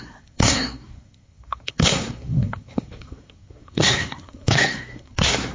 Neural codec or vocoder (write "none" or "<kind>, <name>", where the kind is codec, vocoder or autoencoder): codec, SNAC